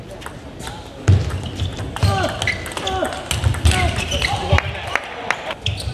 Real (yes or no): yes